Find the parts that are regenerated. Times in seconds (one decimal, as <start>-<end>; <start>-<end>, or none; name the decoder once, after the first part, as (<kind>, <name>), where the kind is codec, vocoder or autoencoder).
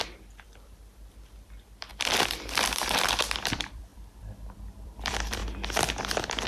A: 0.0-5.4 (vocoder, BigVGAN v2); 6.0-6.5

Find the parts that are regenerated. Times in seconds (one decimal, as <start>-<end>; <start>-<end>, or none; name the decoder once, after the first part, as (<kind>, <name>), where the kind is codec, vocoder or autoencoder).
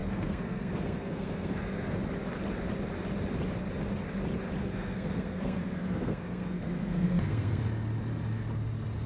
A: 0.0-2.0 (codec, SNAC); 4.6-7.6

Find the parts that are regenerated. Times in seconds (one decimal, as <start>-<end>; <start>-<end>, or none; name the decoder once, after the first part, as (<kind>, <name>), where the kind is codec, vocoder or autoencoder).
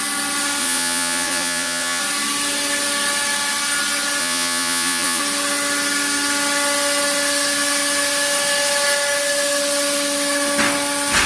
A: 0.6-2.0 (vocoder, Vocos); 4.2-5.2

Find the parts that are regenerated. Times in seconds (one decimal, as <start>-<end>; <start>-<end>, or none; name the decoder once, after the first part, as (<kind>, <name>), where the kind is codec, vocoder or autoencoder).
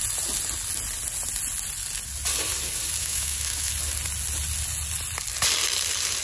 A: 3.0-3.7 (autoencoder, DAC-VAE)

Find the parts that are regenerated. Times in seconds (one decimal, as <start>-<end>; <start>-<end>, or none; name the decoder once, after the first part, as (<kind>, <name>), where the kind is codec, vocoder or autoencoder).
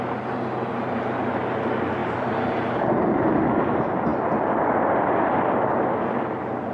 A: 2.0-2.9 (vocoder, BigVGAN v2)